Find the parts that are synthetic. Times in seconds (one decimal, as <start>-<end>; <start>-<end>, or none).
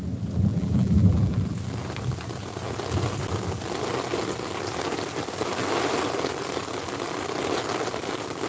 0.5-1.4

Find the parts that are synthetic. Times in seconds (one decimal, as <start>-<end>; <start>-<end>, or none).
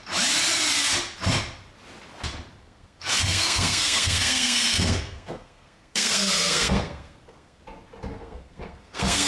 2.6-7.6; 8.1-9.3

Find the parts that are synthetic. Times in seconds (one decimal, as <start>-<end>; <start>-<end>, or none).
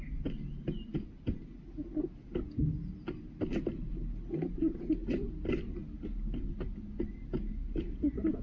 none